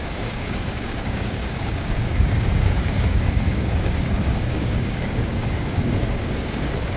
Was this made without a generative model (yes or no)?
no